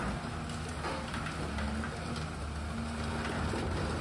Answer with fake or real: real